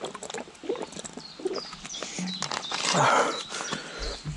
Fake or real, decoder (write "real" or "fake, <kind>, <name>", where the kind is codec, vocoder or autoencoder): real